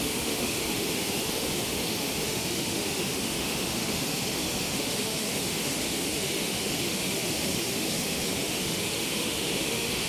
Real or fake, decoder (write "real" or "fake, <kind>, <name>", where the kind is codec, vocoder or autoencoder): fake, autoencoder, DAC-VAE